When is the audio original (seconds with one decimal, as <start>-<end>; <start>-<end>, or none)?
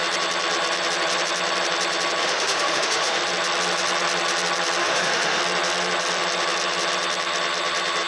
0.0-2.2; 3.2-4.8; 5.4-8.1